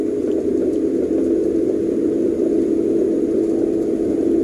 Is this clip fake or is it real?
real